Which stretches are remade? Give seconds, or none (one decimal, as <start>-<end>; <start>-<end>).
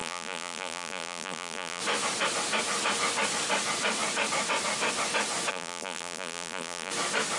0.0-1.8; 5.5-6.9